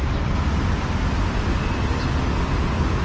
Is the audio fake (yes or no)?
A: no